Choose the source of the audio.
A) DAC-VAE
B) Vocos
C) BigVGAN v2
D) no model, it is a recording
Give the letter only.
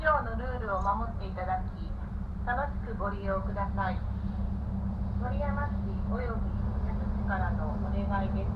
D